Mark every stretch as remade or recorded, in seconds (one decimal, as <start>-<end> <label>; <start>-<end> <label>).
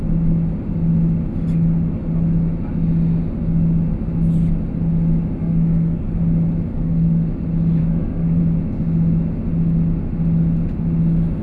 0.0-5.4 recorded; 5.4-6.2 remade; 6.2-6.7 recorded; 6.7-7.3 remade; 7.3-7.8 recorded; 7.8-8.4 remade; 8.4-11.4 recorded